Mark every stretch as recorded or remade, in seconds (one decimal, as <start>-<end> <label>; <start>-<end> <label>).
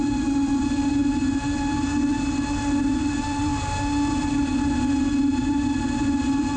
0.0-1.0 remade; 1.0-2.8 recorded; 2.8-3.5 remade; 3.5-4.1 recorded; 4.1-4.5 remade; 4.5-5.1 recorded; 5.1-6.6 remade